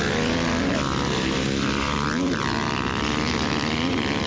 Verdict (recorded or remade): recorded